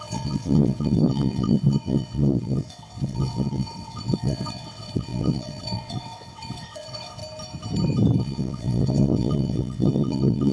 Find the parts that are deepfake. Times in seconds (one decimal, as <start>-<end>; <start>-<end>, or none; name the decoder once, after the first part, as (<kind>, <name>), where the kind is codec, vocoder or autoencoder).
0.0-7.2 (vocoder, WaveNeXt); 8.2-10.5